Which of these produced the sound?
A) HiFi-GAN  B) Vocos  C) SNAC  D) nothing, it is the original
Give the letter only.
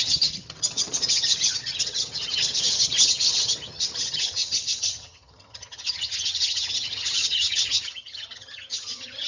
A